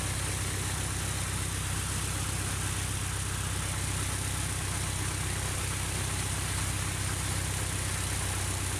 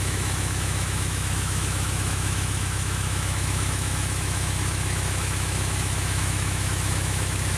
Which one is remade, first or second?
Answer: second